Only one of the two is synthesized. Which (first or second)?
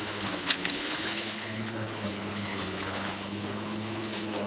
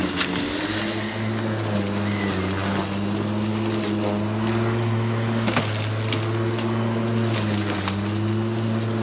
first